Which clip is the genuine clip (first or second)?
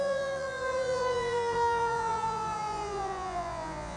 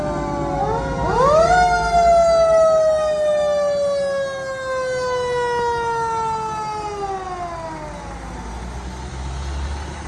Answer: second